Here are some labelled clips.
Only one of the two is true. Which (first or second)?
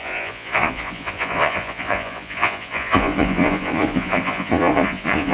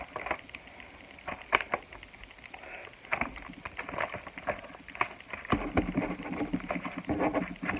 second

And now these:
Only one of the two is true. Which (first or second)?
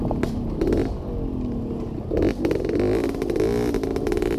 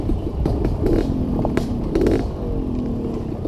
first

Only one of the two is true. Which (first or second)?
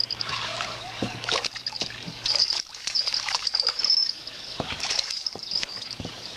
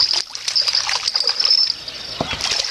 second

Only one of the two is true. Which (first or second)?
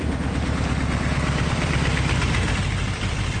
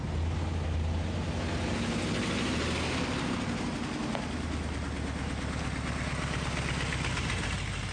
second